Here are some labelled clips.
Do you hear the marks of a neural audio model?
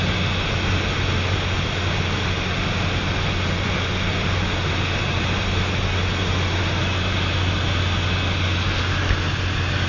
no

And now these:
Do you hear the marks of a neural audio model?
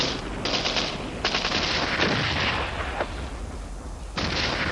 no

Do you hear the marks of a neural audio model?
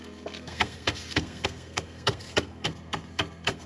yes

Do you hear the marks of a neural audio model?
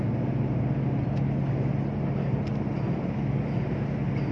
no